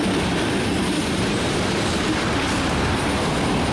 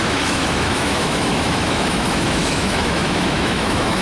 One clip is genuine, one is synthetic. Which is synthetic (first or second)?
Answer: second